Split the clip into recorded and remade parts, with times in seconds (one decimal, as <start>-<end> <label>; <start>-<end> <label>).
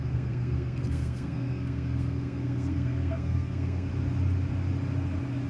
0.0-3.9 remade; 3.9-5.5 recorded